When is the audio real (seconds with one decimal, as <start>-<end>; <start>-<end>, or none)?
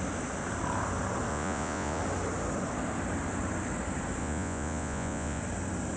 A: 0.0-1.3; 2.0-4.2; 5.4-6.0